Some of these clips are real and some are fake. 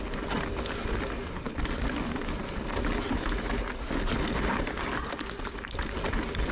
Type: real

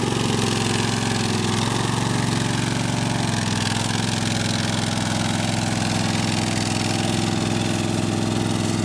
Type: real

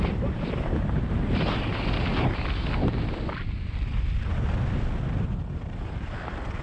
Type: real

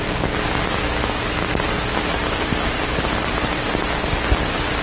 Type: real